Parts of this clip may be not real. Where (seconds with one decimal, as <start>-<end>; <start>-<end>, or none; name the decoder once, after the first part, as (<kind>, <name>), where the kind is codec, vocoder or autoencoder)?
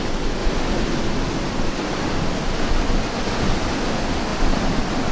0.4-1.0 (vocoder, BigVGAN v2)